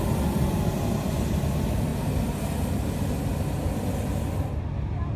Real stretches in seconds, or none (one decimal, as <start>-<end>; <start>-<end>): 0.0-5.2